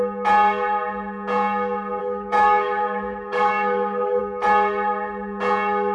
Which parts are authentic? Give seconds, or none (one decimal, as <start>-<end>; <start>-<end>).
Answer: 0.0-2.0; 4.2-5.9